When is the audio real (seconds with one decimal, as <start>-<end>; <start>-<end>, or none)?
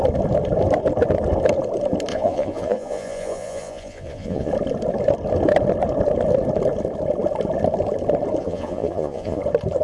0.0-2.1; 4.5-8.4; 9.4-9.8